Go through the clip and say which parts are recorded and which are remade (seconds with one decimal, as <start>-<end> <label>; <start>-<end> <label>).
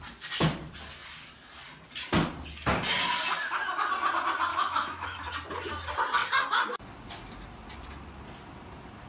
0.0-4.5 recorded; 4.5-5.2 remade; 5.2-9.1 recorded